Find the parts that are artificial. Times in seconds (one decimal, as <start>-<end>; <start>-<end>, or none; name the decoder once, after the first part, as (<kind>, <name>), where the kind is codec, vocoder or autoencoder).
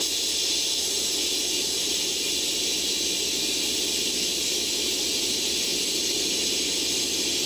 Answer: none